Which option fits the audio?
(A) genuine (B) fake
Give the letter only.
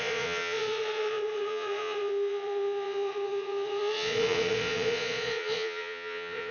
B